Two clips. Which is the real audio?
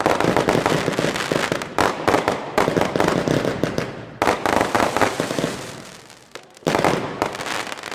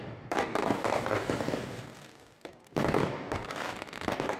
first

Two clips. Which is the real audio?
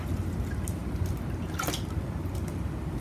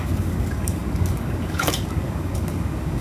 first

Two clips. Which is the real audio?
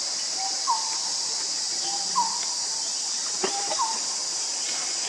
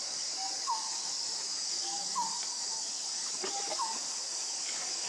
first